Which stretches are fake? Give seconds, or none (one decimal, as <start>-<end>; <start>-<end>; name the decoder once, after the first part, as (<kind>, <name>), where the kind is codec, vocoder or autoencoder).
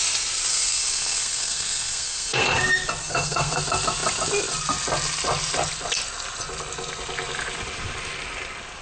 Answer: 0.5-2.6 (codec, SNAC); 3.0-3.6